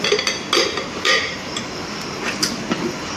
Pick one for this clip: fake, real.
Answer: real